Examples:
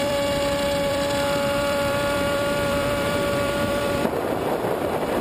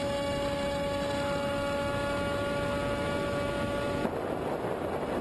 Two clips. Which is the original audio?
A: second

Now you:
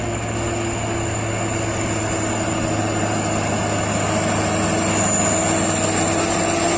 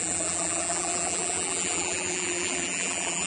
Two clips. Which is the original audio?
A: first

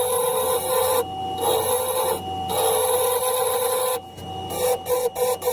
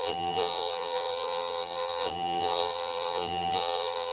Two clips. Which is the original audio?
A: first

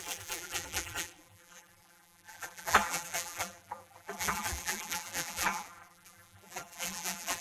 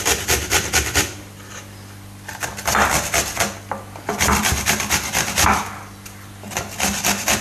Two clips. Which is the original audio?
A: second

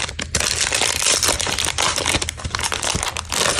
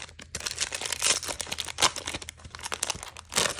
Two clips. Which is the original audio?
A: second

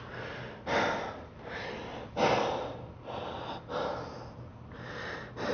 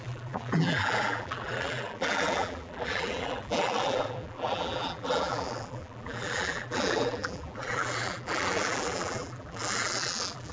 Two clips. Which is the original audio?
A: first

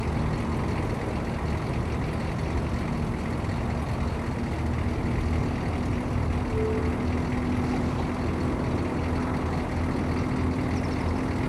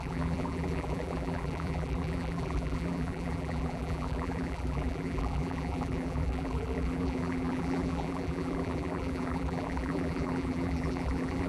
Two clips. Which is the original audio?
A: first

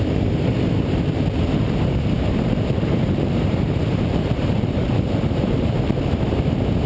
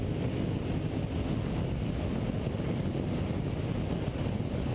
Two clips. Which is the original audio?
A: second